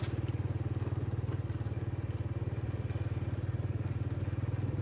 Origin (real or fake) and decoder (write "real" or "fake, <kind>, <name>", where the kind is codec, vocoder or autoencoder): real